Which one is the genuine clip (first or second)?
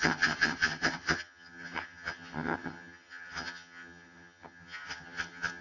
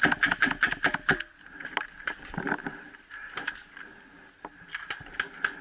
second